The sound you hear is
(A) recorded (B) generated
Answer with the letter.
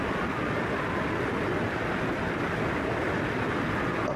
A